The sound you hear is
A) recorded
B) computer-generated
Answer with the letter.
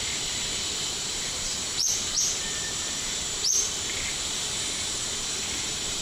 B